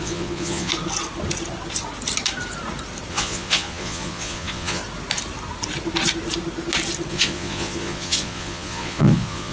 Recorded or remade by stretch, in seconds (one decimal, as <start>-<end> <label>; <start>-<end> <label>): 0.0-0.7 remade; 0.7-3.1 recorded; 3.1-4.8 remade; 4.8-7.1 recorded; 7.1-9.5 remade